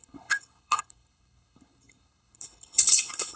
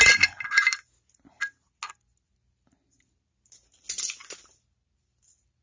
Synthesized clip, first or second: first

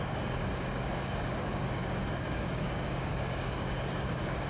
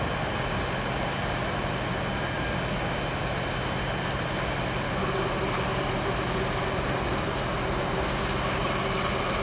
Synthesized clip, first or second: first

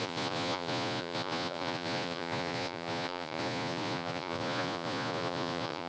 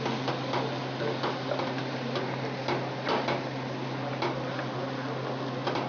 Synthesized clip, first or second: first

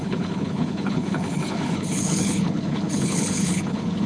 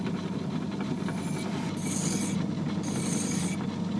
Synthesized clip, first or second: first